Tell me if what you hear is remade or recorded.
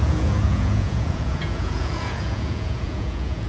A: remade